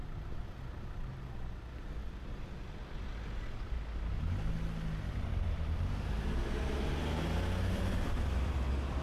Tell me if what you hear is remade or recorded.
recorded